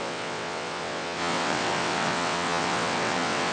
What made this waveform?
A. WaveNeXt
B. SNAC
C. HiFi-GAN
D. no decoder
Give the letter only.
A